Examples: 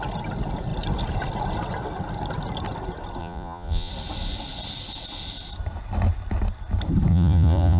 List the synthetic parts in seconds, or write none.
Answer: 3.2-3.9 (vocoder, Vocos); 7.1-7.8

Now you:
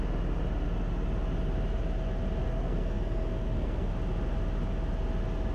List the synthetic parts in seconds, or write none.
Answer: 2.5-3.9 (codec, SNAC)